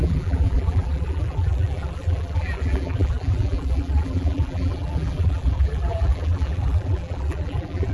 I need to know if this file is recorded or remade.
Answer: remade